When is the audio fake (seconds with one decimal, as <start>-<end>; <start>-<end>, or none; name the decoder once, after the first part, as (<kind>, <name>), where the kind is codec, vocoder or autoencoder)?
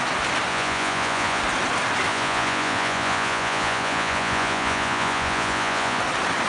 0.5-1.4 (vocoder, Vocos); 2.1-6.0